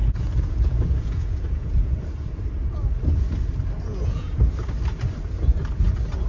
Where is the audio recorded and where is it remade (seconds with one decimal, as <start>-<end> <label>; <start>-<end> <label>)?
0.0-2.0 remade; 2.0-3.9 recorded; 3.9-4.5 remade; 4.5-6.3 recorded

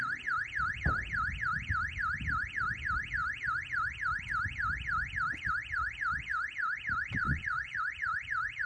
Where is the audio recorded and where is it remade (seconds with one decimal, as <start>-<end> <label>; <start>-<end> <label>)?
0.0-7.2 recorded; 7.2-7.8 remade; 7.8-8.7 recorded

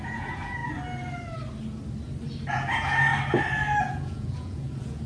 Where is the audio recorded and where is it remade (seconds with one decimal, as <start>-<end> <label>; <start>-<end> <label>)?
0.0-0.6 remade; 0.6-2.5 recorded; 2.5-3.1 remade; 3.1-3.8 recorded; 3.8-5.1 remade

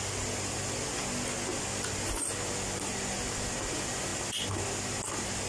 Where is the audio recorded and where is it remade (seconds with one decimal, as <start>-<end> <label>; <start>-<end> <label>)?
0.0-5.5 recorded

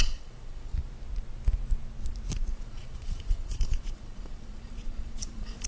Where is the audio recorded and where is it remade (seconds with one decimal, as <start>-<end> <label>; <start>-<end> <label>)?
0.0-0.7 remade; 0.7-2.5 recorded; 2.5-5.7 remade